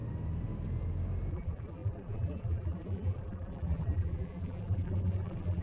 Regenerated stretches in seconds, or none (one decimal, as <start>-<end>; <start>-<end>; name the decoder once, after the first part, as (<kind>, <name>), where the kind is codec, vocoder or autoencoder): 1.3-5.6 (vocoder, BigVGAN v2)